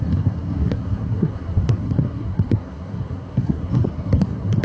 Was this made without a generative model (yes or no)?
no